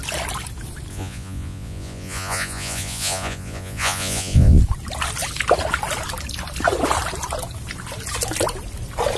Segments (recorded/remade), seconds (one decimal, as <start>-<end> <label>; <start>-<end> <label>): 0.0-0.9 recorded; 0.9-4.6 remade; 4.6-9.2 recorded